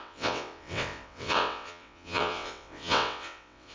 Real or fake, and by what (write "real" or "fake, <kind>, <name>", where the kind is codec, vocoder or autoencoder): fake, vocoder, WaveNeXt